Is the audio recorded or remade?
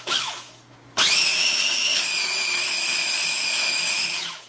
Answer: remade